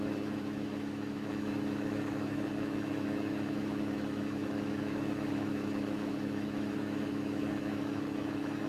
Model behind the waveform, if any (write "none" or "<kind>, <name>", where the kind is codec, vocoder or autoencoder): autoencoder, DAC-VAE